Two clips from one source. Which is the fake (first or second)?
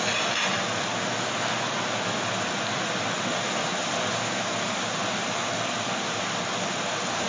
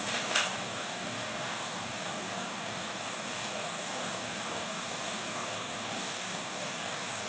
second